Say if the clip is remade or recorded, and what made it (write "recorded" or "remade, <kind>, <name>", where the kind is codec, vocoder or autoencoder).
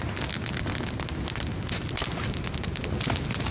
recorded